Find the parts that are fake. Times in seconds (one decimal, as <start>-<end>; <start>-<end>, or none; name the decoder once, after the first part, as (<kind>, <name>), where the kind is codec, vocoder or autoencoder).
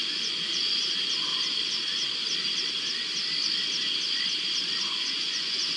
0.0-1.3 (vocoder, Vocos); 4.8-5.8